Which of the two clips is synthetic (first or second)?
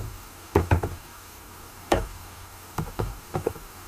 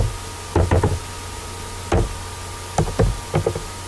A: first